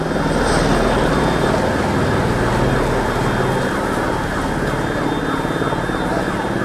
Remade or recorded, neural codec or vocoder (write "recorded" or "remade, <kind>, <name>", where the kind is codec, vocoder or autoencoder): recorded